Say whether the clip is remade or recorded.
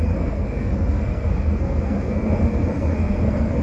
remade